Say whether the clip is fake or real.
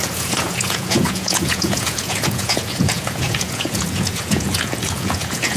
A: fake